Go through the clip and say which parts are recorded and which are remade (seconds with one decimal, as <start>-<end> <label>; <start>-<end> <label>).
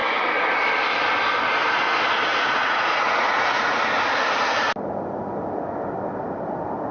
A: 0.0-2.3 recorded; 2.3-3.8 remade; 3.8-6.9 recorded